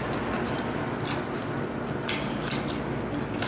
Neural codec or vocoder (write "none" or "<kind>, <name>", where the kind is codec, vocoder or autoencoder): none